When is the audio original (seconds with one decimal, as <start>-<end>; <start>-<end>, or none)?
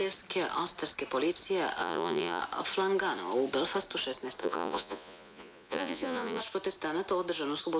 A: 0.0-1.8; 2.4-4.4; 6.4-7.8